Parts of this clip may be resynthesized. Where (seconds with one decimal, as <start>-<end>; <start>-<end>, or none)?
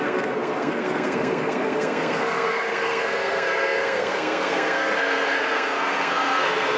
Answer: 0.0-6.8